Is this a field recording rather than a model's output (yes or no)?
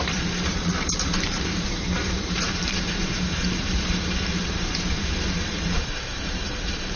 no